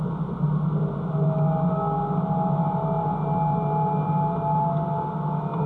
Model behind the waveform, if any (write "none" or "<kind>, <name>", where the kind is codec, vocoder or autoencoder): none